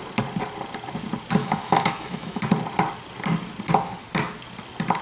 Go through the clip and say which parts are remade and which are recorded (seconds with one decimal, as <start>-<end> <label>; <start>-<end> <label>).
0.0-1.4 recorded; 1.4-2.4 remade; 2.4-5.0 recorded